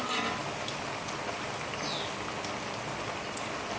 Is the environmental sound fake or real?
real